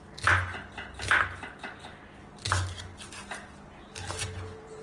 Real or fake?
real